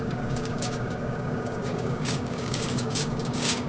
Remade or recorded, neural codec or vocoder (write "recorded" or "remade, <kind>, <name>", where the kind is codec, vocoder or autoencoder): remade, codec, DAC